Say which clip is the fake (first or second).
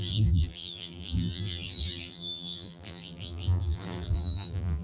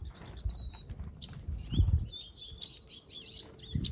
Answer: first